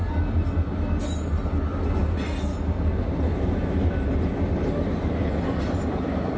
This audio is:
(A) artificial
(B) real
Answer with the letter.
B